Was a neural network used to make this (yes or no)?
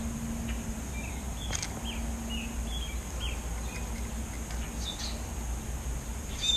no